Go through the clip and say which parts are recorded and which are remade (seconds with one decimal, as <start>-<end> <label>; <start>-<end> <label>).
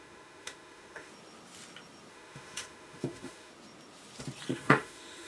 0.0-1.1 remade; 1.1-2.1 recorded; 2.1-3.5 remade; 3.5-4.5 recorded; 4.5-5.3 remade